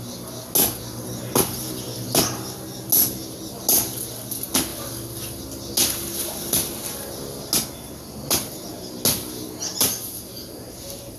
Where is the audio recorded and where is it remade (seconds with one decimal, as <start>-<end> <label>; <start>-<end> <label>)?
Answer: 0.0-9.7 recorded; 9.7-10.6 remade; 10.6-11.2 recorded